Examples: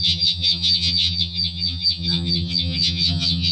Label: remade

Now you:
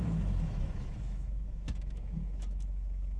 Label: remade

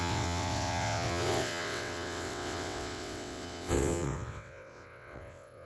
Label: remade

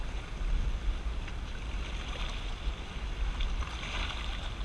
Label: recorded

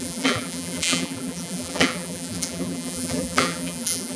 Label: remade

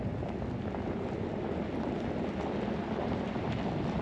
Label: recorded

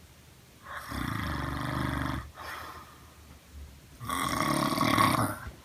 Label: recorded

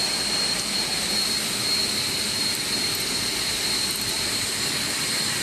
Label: remade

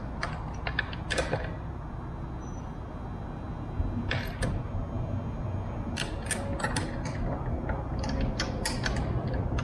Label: recorded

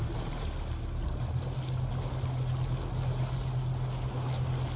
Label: recorded